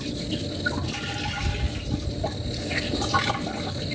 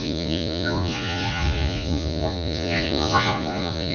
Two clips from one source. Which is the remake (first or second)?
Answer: second